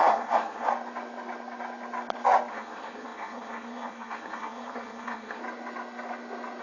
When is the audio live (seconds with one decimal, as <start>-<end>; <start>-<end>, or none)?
0.7-2.5; 5.4-6.6